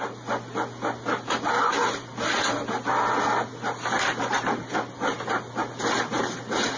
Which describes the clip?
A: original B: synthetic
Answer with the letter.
A